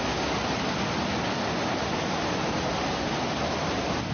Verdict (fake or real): real